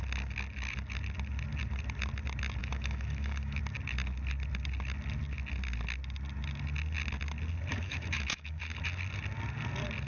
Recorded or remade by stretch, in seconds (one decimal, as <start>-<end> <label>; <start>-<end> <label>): 0.0-2.6 recorded; 2.6-3.6 remade; 3.6-7.7 recorded; 7.7-8.6 remade; 8.6-10.1 recorded